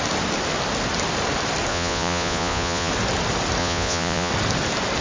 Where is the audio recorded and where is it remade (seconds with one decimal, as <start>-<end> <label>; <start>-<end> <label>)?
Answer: 0.0-1.7 recorded; 1.7-2.9 remade; 2.9-3.6 recorded; 3.6-4.3 remade; 4.3-5.0 recorded